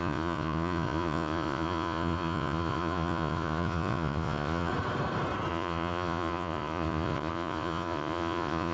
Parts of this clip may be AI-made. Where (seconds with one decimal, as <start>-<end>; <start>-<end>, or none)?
0.0-4.7; 5.5-8.7